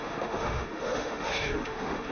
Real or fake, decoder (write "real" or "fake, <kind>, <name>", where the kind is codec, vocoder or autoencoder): fake, autoencoder, DAC-VAE